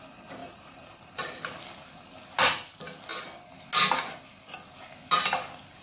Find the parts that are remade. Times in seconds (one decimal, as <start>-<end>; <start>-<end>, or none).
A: 0.4-1.6